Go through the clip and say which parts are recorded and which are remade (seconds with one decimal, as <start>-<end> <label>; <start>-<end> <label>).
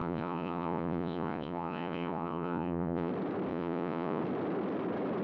0.0-3.1 remade; 3.1-3.5 recorded; 3.5-4.2 remade; 4.2-5.2 recorded